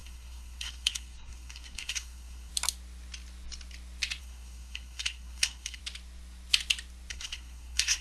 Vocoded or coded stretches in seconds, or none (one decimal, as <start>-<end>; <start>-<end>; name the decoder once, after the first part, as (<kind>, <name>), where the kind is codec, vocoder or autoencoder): 0.0-2.5 (codec, SNAC); 4.2-5.8; 7.1-8.0